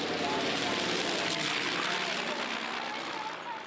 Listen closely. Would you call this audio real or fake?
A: real